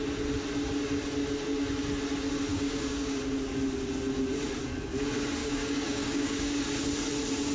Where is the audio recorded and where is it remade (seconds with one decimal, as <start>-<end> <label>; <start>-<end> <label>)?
0.0-2.5 recorded; 2.5-3.2 remade; 3.2-5.4 recorded; 5.4-6.6 remade; 6.6-7.5 recorded